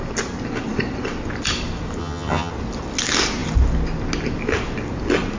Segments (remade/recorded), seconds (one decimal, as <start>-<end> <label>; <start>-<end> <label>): 0.0-2.0 recorded; 2.0-2.5 remade; 2.5-5.4 recorded